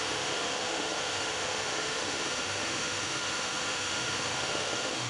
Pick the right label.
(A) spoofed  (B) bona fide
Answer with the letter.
A